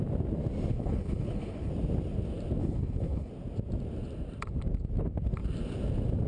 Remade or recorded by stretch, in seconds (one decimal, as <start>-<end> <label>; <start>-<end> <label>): 0.0-0.7 recorded; 0.7-1.7 remade; 1.7-2.6 recorded; 2.6-3.3 remade; 3.3-6.3 recorded